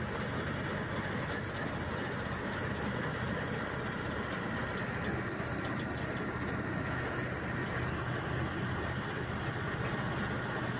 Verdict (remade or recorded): recorded